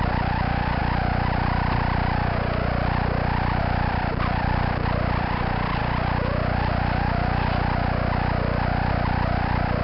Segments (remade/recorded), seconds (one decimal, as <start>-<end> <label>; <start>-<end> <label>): 0.0-0.8 remade; 0.8-3.6 recorded; 3.6-5.8 remade; 5.8-8.9 recorded; 8.9-9.8 remade

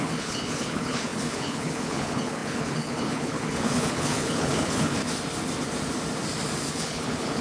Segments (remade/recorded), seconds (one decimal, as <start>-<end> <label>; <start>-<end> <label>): 0.0-5.0 remade; 5.0-6.7 recorded; 6.7-7.4 remade